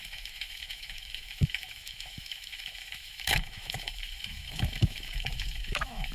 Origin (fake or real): fake